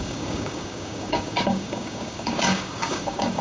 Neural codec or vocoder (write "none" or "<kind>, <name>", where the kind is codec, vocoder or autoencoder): codec, DAC